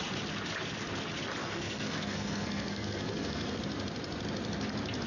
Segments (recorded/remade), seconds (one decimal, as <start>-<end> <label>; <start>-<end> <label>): 0.0-1.4 recorded; 1.4-3.6 remade; 3.6-5.1 recorded